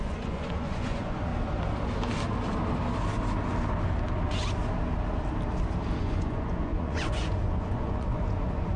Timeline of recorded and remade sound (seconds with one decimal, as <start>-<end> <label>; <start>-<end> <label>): 0.0-1.3 remade; 1.3-6.0 recorded; 6.0-8.8 remade

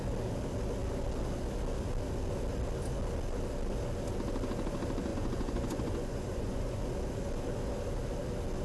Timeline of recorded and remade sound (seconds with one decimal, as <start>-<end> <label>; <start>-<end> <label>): 0.0-5.1 recorded; 5.1-6.8 remade; 6.8-8.6 recorded

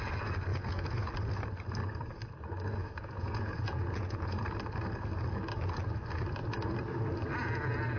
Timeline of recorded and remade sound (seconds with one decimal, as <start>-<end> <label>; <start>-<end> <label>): 0.0-0.5 recorded; 0.5-1.1 remade; 1.1-2.8 recorded; 2.8-4.4 remade; 4.4-8.0 recorded

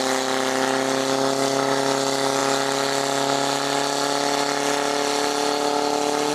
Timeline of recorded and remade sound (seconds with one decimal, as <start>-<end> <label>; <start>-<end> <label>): 0.0-6.3 recorded

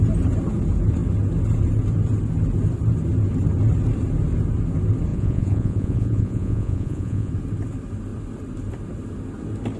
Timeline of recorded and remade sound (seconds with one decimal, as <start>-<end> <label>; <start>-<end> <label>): 0.0-5.1 recorded; 5.1-7.3 remade; 7.3-9.8 recorded